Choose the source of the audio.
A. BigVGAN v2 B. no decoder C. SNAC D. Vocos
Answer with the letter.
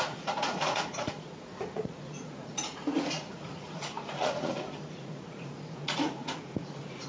D